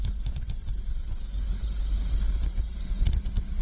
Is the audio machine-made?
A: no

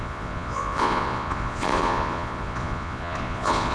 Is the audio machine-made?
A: yes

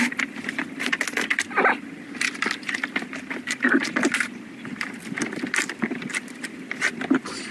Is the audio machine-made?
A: no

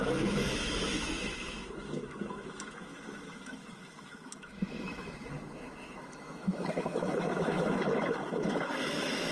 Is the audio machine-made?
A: yes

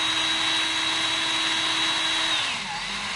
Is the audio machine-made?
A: no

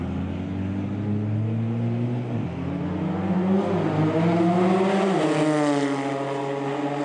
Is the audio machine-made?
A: no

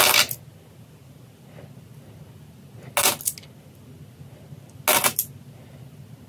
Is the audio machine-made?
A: no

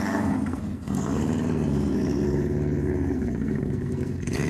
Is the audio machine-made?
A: yes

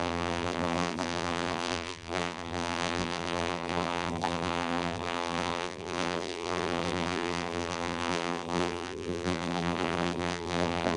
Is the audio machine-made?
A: yes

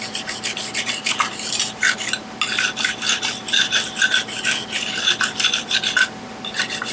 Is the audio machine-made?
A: no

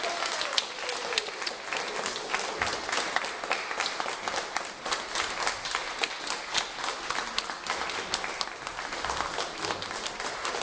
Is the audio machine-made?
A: no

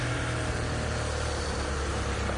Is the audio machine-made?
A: no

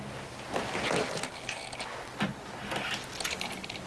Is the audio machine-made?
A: no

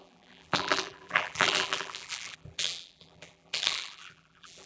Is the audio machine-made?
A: yes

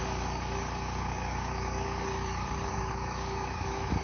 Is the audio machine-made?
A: yes